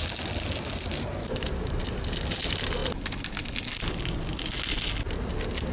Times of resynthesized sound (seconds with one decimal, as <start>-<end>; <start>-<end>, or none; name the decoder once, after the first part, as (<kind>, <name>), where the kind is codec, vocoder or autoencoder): 1.1-1.8 (vocoder, BigVGAN v2)